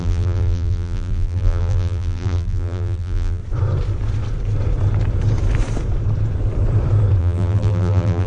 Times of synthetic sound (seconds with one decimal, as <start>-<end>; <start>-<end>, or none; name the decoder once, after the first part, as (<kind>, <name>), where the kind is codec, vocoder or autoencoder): 0.0-3.4 (vocoder, BigVGAN v2); 7.2-8.3